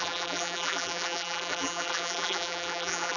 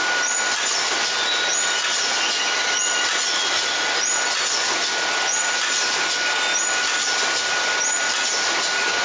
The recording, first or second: second